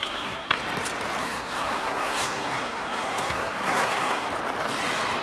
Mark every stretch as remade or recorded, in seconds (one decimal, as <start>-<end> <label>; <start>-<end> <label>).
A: 0.0-0.6 remade; 0.6-1.2 recorded; 1.2-4.3 remade; 4.3-5.2 recorded